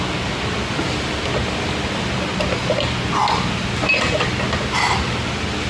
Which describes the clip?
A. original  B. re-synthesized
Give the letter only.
A